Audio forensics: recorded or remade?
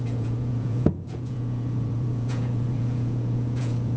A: remade